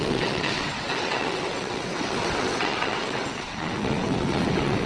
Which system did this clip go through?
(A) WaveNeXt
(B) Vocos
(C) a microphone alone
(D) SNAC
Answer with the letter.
A